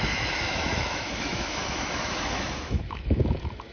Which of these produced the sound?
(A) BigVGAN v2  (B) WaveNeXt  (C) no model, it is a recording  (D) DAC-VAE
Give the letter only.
D